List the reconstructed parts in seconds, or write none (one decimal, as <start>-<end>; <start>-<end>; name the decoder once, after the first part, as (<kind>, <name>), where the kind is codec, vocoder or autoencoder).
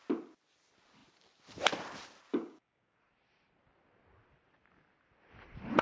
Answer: 2.3-3.0 (codec, DAC)